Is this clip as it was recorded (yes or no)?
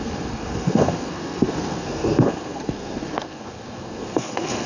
no